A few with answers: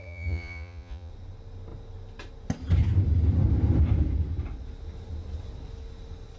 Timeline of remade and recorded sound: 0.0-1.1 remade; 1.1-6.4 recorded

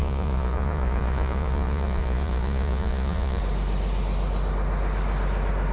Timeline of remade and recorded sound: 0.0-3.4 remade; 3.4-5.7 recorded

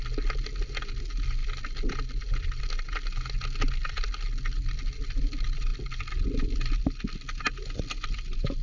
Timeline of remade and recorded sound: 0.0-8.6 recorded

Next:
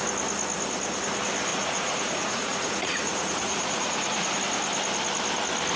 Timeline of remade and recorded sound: 0.0-1.5 recorded; 1.5-4.4 remade; 4.4-5.8 recorded

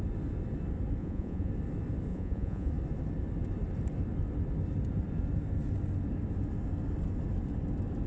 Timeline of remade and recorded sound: 0.0-1.0 recorded; 1.0-1.5 remade; 1.5-2.1 recorded; 2.1-2.7 remade; 2.7-8.1 recorded